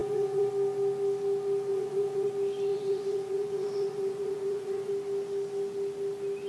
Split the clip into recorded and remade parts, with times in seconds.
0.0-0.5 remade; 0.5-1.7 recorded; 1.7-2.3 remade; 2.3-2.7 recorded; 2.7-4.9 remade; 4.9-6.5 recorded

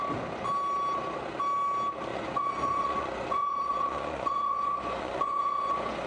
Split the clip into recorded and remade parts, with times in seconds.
0.0-2.1 recorded; 2.1-6.1 remade

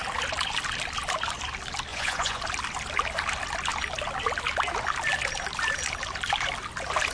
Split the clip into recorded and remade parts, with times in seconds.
0.0-1.9 recorded; 1.9-2.4 remade; 2.4-7.1 recorded

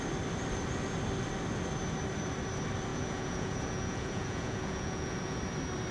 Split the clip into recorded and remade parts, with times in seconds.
0.0-2.9 recorded; 2.9-5.4 remade; 5.4-5.9 recorded